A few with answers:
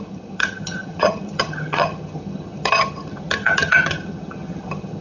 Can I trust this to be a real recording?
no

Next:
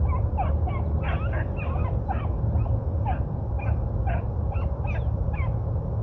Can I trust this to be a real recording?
yes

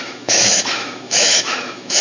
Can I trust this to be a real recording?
no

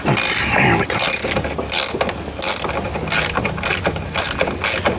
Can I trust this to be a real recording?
yes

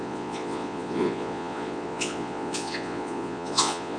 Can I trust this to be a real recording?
no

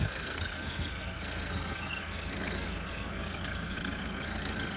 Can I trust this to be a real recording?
no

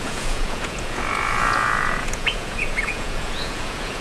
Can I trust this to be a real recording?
no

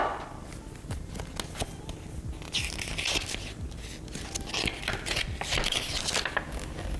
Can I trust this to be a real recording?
yes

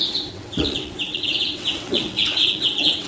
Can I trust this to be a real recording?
no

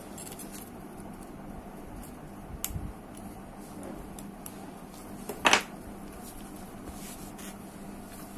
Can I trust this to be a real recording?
yes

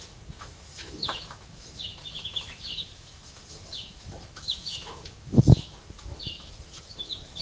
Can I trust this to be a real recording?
no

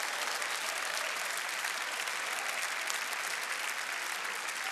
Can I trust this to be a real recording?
yes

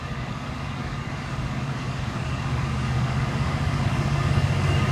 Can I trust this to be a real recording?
no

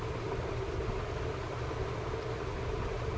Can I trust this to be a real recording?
yes